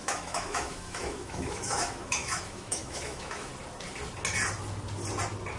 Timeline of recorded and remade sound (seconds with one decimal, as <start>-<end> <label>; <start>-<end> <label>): 0.0-3.5 remade; 3.5-5.6 recorded

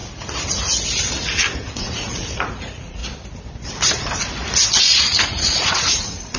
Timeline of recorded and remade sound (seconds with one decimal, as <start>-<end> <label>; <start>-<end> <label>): 0.0-1.8 recorded; 1.8-3.0 remade; 3.0-4.8 recorded; 4.8-6.4 remade

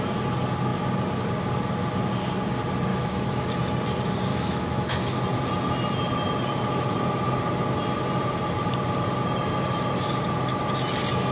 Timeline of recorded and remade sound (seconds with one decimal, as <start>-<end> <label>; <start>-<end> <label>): 0.0-2.9 recorded; 2.9-3.5 remade; 3.5-4.3 recorded; 4.3-5.2 remade; 5.2-11.3 recorded